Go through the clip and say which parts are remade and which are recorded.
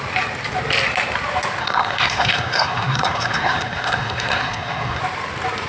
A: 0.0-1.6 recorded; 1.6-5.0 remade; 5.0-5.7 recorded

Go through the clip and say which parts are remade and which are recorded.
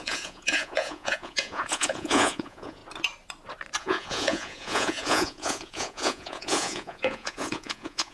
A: 0.0-2.8 remade; 2.8-3.8 recorded; 3.8-8.1 remade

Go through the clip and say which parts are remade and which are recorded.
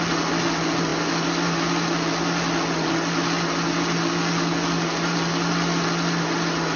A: 0.0-6.8 recorded